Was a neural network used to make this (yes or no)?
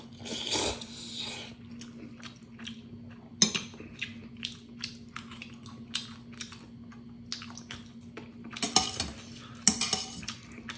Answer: no